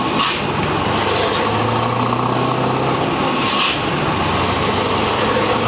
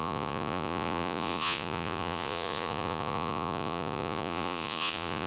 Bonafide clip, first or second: first